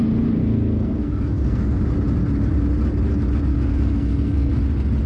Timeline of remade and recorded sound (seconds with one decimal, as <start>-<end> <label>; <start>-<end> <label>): 0.0-0.4 recorded; 0.4-1.8 remade; 1.8-3.5 recorded; 3.5-4.6 remade; 4.6-5.1 recorded